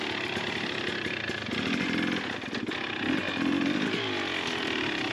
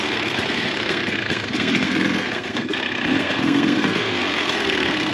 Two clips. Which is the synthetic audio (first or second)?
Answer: second